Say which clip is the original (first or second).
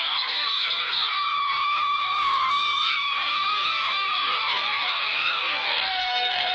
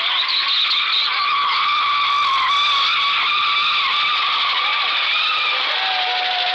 second